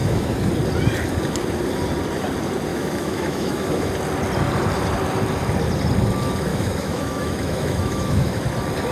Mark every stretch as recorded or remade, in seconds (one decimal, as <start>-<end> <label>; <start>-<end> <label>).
0.0-0.5 remade; 0.5-2.7 recorded; 2.7-3.9 remade; 3.9-6.5 recorded; 6.5-8.4 remade; 8.4-8.9 recorded